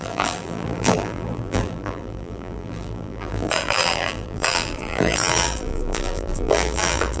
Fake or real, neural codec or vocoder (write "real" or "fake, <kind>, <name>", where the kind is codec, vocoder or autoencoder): fake, vocoder, BigVGAN v2